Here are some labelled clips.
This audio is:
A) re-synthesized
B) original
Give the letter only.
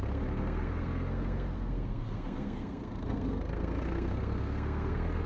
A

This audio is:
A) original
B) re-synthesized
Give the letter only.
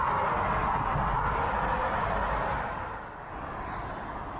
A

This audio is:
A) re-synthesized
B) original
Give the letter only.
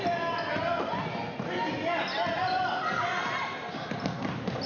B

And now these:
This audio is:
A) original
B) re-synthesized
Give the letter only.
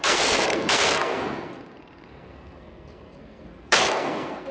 B